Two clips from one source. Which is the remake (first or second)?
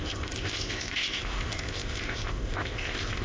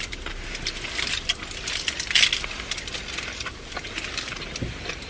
first